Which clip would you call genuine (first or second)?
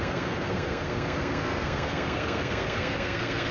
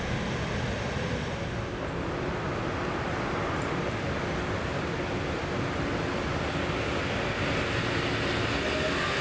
second